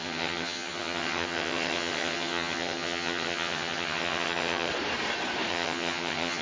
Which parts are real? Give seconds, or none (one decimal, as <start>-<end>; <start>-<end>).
4.7-5.5